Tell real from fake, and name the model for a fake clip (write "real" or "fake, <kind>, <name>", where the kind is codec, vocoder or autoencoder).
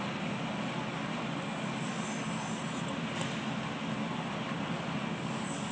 real